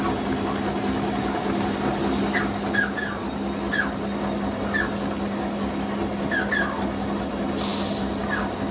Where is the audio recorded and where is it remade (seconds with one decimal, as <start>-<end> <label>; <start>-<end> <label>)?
0.0-8.7 recorded